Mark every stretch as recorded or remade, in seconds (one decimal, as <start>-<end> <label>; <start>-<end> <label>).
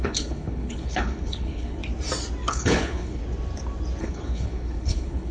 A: 0.0-1.8 remade; 1.8-2.5 recorded; 2.5-3.2 remade; 3.2-4.0 recorded; 4.0-5.3 remade